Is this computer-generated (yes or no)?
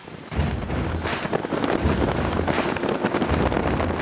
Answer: no